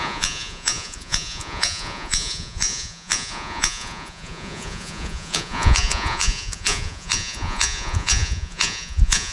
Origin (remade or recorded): remade